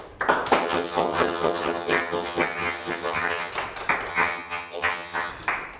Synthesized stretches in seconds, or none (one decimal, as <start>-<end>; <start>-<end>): 0.6-3.5; 4.1-5.3